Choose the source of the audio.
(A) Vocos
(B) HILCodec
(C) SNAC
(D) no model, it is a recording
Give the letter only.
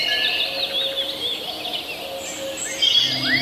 D